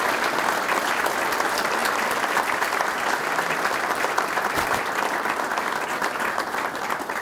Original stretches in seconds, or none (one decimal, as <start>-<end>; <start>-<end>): 0.0-7.2

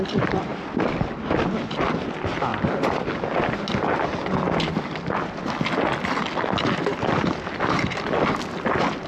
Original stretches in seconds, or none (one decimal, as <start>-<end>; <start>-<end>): 0.0-9.1